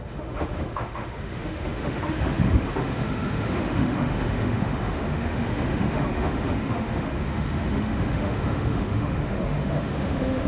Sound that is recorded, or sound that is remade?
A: remade